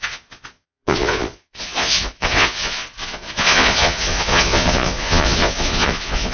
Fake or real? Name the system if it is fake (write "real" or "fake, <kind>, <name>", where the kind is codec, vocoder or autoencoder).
fake, vocoder, Vocos